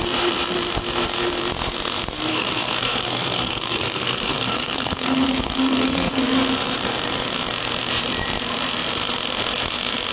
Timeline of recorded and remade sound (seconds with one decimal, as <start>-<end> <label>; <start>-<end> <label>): 0.0-2.3 recorded; 2.3-6.2 remade; 6.2-10.1 recorded

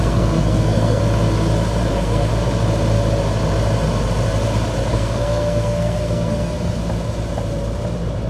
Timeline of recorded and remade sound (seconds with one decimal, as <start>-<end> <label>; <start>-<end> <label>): 0.0-1.0 remade; 1.0-1.9 recorded; 1.9-2.3 remade; 2.3-4.9 recorded; 4.9-6.8 remade; 6.8-8.3 recorded

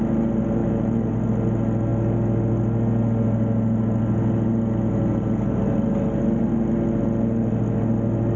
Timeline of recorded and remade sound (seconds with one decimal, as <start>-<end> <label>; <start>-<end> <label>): 0.0-8.4 recorded

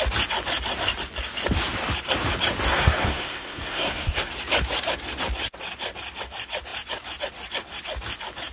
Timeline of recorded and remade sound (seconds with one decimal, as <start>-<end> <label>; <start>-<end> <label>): 0.0-2.7 recorded; 2.7-4.3 remade; 4.3-8.5 recorded